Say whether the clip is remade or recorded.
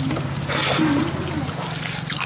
recorded